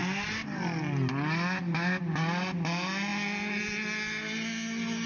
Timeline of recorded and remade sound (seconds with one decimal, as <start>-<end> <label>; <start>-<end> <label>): 0.0-5.1 recorded